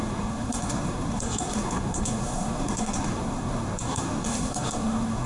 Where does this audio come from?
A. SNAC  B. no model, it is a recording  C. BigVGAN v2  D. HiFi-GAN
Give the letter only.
A